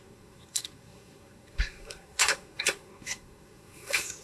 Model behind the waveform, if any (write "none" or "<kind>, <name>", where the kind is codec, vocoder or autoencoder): codec, SNAC